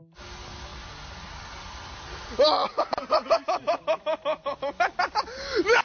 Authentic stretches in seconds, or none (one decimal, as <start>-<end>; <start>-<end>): 0.0-5.8